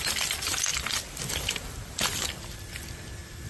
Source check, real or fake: fake